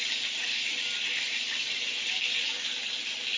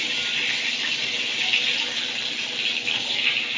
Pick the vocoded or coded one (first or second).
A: first